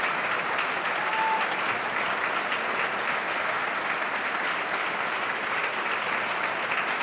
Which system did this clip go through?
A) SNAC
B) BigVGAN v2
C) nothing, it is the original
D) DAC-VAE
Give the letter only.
C